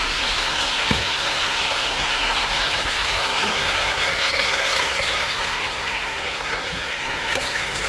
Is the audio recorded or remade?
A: remade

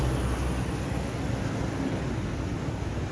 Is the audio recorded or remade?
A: recorded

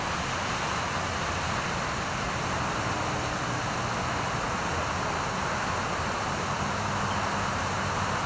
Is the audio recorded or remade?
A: recorded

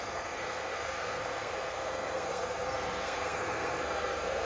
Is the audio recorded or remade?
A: remade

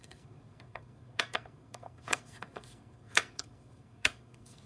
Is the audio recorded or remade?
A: remade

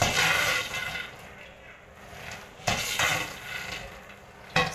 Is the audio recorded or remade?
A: recorded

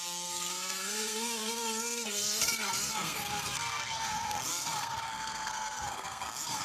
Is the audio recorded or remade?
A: remade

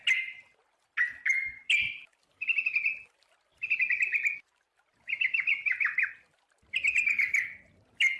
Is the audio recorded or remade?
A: recorded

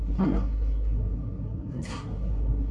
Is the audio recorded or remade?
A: remade